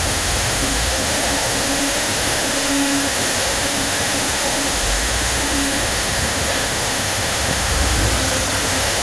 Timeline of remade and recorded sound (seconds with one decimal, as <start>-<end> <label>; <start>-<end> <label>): 0.0-8.0 remade; 8.0-8.6 recorded; 8.6-9.0 remade